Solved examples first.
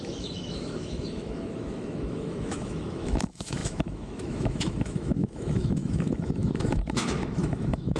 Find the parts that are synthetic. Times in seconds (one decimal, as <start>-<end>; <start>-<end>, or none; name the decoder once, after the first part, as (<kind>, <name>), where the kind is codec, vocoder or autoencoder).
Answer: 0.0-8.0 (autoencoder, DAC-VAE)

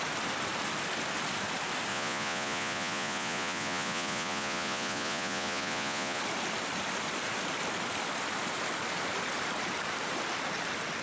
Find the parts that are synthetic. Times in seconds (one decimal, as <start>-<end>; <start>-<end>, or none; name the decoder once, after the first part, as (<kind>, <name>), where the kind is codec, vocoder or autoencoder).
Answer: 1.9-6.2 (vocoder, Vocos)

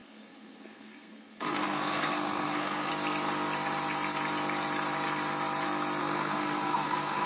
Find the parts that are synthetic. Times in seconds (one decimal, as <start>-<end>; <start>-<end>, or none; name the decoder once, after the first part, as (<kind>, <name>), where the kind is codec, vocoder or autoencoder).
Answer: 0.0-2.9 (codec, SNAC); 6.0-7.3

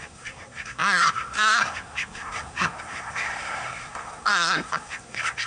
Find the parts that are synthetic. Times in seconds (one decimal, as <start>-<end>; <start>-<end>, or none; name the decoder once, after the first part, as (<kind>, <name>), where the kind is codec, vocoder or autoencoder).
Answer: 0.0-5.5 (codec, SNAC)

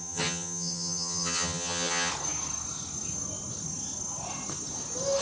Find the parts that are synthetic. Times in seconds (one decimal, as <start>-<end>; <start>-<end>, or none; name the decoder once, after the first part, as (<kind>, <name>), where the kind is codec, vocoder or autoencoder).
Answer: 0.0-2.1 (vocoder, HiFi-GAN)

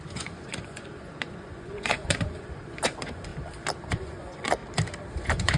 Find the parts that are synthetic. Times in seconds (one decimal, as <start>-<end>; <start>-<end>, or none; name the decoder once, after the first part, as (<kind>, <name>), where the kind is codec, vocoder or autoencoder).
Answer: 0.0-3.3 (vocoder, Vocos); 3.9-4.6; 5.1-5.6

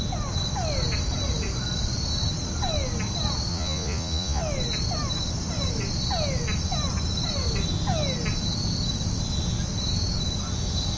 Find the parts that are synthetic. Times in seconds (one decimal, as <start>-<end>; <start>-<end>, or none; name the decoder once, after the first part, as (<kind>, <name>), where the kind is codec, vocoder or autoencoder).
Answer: 3.5-4.4 (vocoder, Vocos)